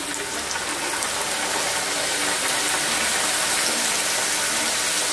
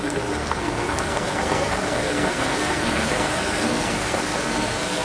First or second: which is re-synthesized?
second